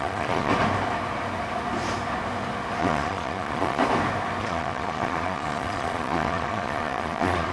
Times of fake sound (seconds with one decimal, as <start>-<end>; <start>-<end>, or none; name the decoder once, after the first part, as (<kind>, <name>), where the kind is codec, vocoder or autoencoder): 0.0-0.5 (vocoder, Vocos); 2.8-3.8; 4.4-7.5